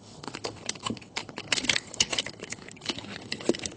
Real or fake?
fake